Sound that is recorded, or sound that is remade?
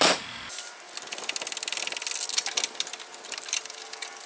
recorded